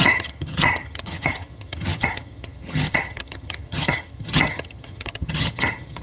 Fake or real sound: fake